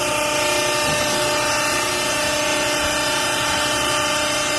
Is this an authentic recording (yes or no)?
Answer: yes